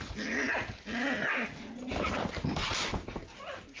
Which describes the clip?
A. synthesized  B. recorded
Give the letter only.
B